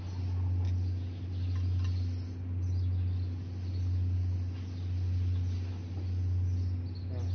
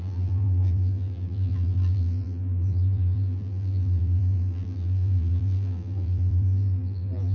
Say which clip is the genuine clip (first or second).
first